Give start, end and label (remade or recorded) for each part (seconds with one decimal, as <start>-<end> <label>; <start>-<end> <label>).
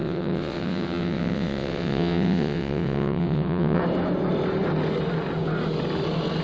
0.0-3.8 remade; 3.8-6.4 recorded